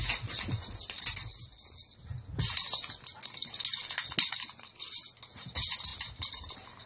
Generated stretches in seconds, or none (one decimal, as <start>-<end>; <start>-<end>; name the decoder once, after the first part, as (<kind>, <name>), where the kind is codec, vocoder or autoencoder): 5.9-6.9 (vocoder, BigVGAN v2)